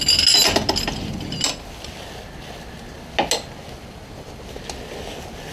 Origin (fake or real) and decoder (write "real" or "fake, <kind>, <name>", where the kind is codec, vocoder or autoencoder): real